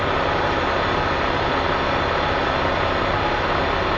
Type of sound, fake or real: real